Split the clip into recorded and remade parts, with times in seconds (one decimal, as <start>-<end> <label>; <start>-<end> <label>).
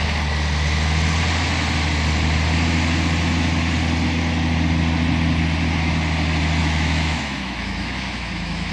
0.0-6.6 recorded; 6.6-8.7 remade